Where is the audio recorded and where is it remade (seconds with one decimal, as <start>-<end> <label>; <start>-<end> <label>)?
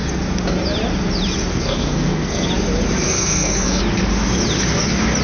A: 0.0-1.5 recorded; 1.5-2.5 remade; 2.5-3.1 recorded; 3.1-3.8 remade; 3.8-5.2 recorded